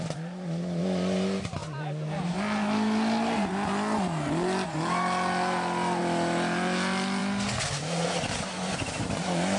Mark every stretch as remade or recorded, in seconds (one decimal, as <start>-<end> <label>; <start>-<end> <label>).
0.0-1.6 remade; 1.6-6.0 recorded; 6.0-7.2 remade; 7.2-7.8 recorded; 7.8-9.6 remade